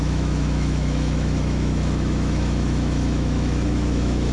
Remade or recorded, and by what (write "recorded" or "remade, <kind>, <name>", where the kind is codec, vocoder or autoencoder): remade, autoencoder, DAC-VAE